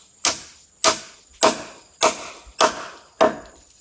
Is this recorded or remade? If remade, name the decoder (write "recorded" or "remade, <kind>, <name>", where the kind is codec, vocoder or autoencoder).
recorded